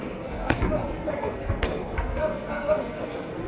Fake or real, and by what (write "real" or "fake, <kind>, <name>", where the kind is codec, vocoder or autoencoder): fake, codec, SNAC